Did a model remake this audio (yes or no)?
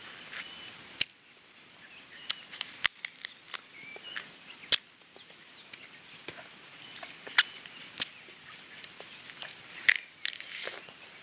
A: no